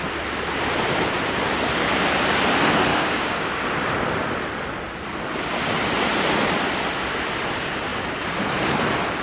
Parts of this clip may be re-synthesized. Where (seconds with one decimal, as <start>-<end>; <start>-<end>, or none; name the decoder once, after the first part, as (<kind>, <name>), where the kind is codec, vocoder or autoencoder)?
2.9-3.6 (codec, DAC)